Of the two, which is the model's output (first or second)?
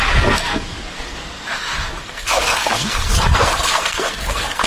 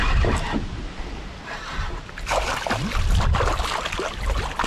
first